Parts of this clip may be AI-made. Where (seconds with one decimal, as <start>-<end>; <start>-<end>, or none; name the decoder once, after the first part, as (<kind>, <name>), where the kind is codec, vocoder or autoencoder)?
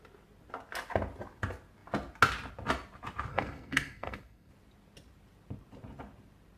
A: 3.3-4.5 (codec, SNAC)